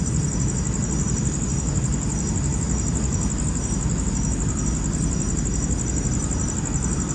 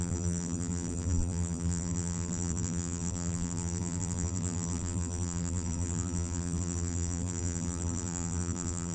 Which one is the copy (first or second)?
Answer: second